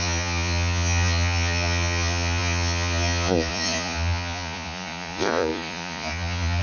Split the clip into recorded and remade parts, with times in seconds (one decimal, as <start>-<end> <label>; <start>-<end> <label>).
0.0-6.6 remade